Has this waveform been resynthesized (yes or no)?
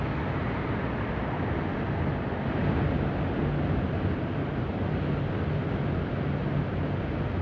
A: no